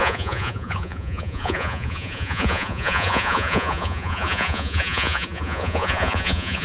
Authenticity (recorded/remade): remade